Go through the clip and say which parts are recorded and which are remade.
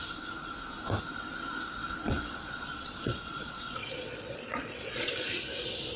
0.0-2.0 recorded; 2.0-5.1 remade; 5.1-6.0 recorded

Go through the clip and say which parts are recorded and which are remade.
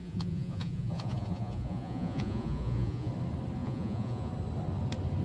0.0-3.1 remade; 3.1-3.6 recorded; 3.6-4.3 remade; 4.3-5.2 recorded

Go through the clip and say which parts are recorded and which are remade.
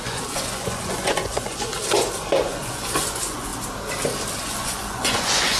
0.0-1.7 remade; 1.7-2.4 recorded; 2.4-3.5 remade; 3.5-4.4 recorded; 4.4-5.6 remade